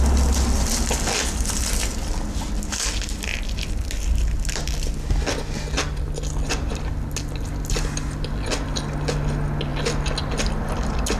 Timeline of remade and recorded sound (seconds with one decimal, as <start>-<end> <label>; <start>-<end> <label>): 0.0-11.2 recorded